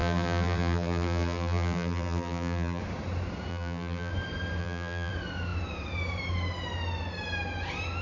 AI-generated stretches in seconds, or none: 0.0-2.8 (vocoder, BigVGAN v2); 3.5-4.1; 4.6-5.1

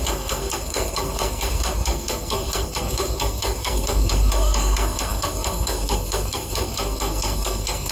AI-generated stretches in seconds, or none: 0.0-7.9 (codec, SNAC)

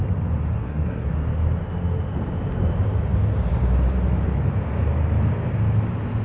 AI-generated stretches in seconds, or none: 0.5-1.1 (codec, SNAC)

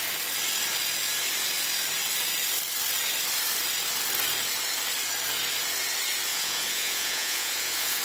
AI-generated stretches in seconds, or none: 6.3-8.0 (vocoder, Vocos)

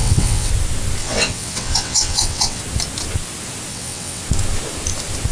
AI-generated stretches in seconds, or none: 0.0-0.5 (vocoder, WaveNeXt); 1.0-2.6; 3.7-4.2

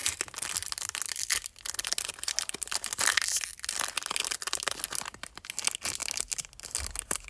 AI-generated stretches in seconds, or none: none